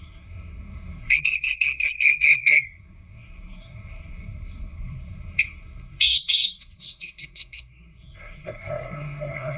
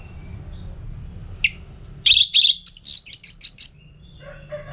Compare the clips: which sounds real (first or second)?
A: second